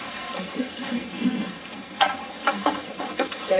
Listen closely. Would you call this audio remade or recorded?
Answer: remade